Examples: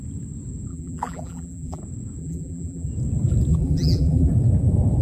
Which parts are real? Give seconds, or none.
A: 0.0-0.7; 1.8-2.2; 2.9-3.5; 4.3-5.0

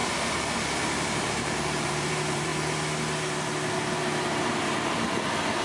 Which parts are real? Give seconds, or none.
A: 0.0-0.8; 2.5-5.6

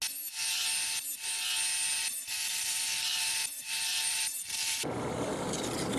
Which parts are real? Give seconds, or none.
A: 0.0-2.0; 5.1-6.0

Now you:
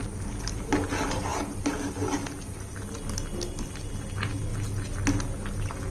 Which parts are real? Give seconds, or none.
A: 0.0-5.9

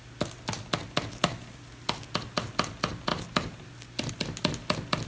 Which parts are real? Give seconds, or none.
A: 0.0-5.1

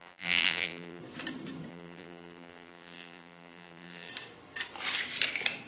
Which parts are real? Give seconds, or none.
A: 1.0-1.7; 4.1-5.7